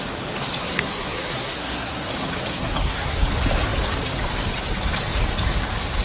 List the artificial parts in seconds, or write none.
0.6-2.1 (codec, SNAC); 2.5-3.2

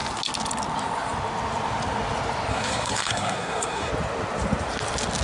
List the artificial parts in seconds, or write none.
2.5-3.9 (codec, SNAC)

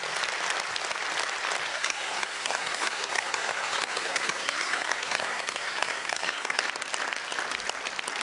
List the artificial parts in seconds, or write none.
1.7-6.6 (codec, SNAC)